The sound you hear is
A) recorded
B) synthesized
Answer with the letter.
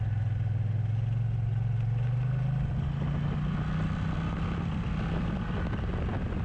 A